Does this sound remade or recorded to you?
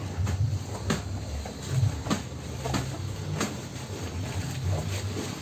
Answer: recorded